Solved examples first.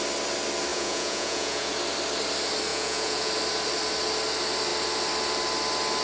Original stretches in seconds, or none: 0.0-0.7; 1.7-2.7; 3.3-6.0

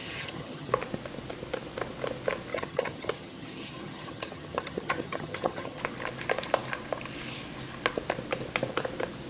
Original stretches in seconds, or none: 0.7-2.5; 5.8-9.3